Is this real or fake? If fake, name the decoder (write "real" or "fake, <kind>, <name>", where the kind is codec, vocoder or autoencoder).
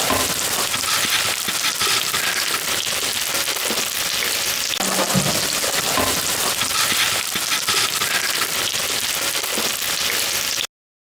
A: real